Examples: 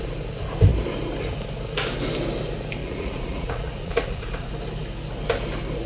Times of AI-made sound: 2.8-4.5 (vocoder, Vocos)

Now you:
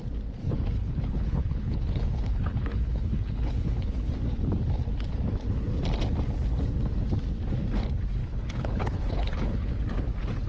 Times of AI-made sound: 0.4-4.1 (codec, HILCodec); 8.2-9.7

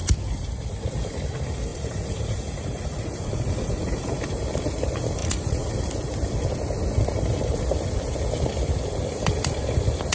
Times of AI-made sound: 1.7-4.2 (vocoder, Vocos); 5.2-5.7

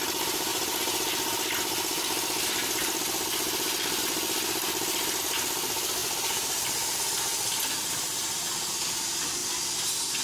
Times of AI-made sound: 6.0-7.0 (vocoder, BigVGAN v2)

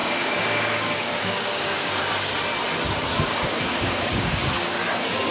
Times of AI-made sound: 0.0-2.0 (codec, DAC); 3.7-4.4

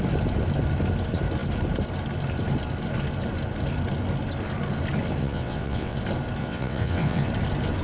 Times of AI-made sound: 5.2-6.0 (vocoder, WaveNeXt); 6.4-7.3